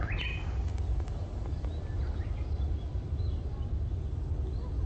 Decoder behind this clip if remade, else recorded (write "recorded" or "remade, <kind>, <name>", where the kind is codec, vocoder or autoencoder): recorded